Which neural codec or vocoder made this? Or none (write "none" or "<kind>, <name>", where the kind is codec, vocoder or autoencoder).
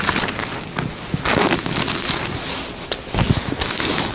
none